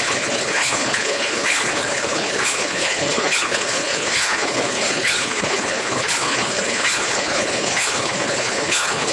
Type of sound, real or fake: fake